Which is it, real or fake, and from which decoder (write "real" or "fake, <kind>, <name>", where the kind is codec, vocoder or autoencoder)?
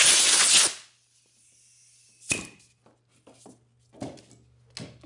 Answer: real